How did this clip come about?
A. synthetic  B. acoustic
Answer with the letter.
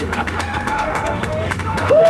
A